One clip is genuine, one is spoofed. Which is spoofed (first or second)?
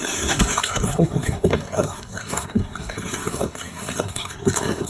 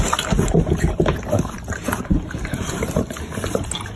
first